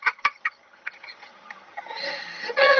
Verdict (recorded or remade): remade